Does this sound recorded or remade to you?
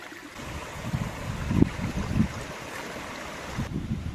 recorded